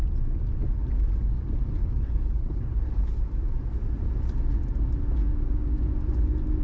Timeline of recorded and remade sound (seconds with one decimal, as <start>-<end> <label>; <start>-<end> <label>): 0.0-1.8 recorded; 1.8-3.2 remade; 3.2-6.6 recorded